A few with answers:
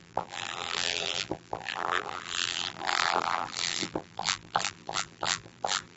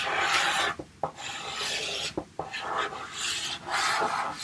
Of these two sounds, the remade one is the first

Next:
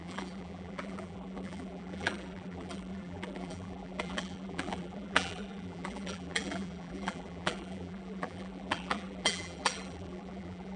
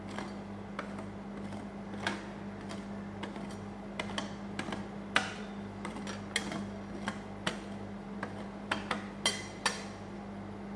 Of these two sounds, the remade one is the first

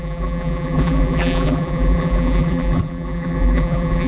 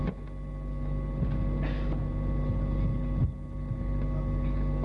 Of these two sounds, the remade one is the first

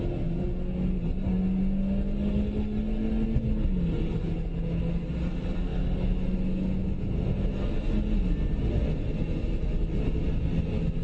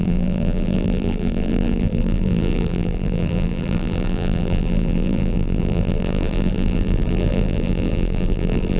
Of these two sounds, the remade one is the second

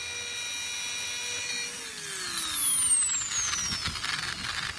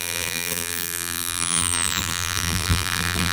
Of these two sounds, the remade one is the second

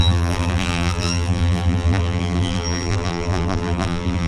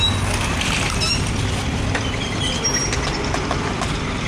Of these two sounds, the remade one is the first